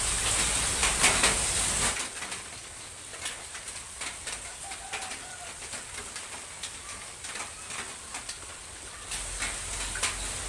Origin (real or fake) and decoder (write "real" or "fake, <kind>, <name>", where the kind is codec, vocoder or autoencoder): real